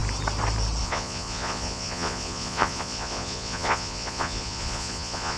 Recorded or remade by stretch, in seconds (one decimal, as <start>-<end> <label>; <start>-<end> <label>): 0.0-0.8 recorded; 0.8-5.4 remade

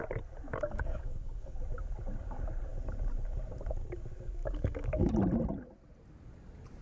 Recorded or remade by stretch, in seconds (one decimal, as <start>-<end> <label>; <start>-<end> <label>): 0.0-0.5 recorded; 0.5-1.6 remade; 1.6-4.4 recorded; 4.4-5.1 remade; 5.1-6.8 recorded

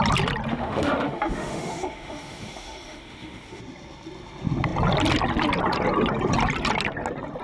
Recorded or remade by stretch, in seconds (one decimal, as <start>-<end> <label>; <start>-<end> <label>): 0.0-0.5 recorded; 0.5-3.6 remade; 3.6-7.4 recorded

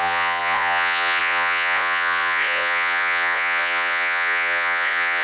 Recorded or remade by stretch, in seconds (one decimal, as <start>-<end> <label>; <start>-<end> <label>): 0.0-5.2 remade

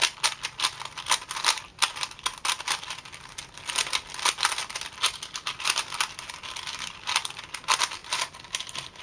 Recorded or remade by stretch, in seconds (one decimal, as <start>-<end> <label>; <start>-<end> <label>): 0.0-9.0 recorded